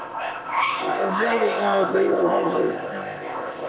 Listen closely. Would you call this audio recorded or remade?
remade